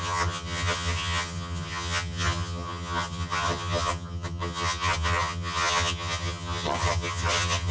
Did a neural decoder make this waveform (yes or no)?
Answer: yes